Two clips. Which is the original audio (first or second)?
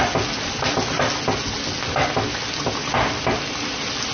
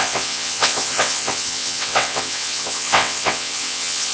first